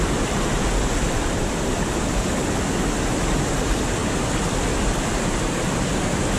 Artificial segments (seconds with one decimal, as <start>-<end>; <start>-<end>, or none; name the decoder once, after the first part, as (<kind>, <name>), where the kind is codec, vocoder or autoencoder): none